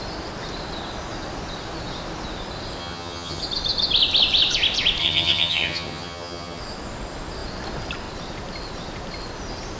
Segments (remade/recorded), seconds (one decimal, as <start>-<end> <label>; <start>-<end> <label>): 0.0-2.8 recorded; 2.8-3.4 remade; 3.4-5.0 recorded; 5.0-6.6 remade; 6.6-9.8 recorded